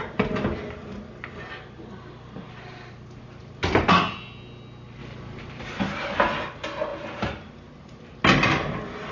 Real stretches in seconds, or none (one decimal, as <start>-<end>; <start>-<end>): 0.0-3.4; 4.0-5.0; 5.8-6.9; 8.2-9.1